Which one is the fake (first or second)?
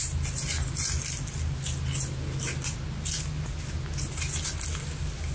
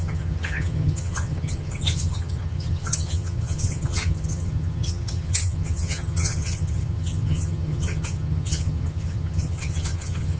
second